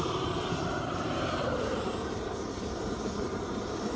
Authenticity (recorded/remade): remade